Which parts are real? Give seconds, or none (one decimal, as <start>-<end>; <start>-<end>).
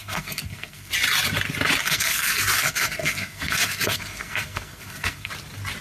0.9-1.8; 5.3-5.8